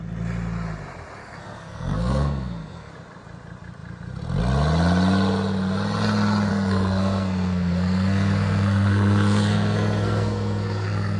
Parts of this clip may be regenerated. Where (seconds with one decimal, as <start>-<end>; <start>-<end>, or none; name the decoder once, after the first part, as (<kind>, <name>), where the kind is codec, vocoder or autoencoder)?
1.2-2.9 (codec, SNAC); 6.5-11.2